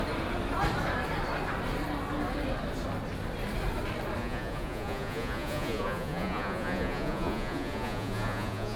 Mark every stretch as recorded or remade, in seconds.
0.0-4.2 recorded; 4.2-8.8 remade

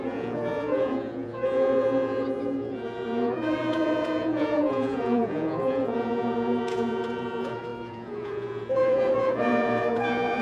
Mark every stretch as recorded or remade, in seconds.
0.0-10.4 remade

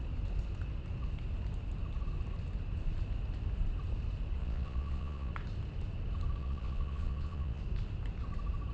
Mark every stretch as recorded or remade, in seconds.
0.0-4.4 recorded; 4.4-5.3 remade; 5.3-6.4 recorded; 6.4-7.6 remade; 7.6-8.7 recorded